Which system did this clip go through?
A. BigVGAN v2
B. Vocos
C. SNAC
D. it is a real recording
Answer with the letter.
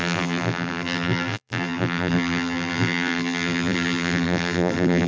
A